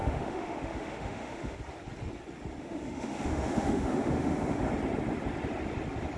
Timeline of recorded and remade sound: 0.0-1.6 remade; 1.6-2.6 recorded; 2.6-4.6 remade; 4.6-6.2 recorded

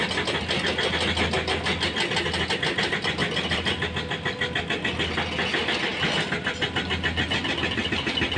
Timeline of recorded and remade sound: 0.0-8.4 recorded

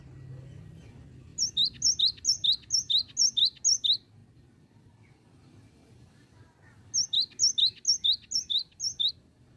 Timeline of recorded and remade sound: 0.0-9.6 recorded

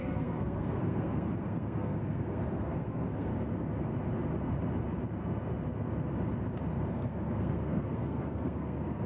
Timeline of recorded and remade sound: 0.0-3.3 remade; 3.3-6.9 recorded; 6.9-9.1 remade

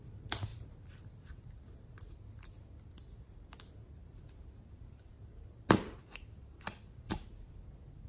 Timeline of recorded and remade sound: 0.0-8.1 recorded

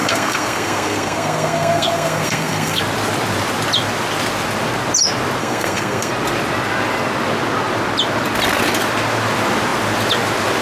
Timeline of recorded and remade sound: 0.0-2.8 remade; 2.8-5.4 recorded; 5.4-6.1 remade; 6.1-10.6 recorded